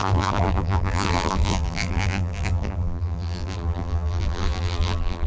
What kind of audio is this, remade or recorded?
remade